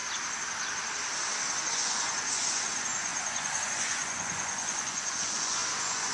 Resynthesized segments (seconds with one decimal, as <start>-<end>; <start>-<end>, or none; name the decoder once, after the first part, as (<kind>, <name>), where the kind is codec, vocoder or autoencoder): 1.7-6.1 (vocoder, Vocos)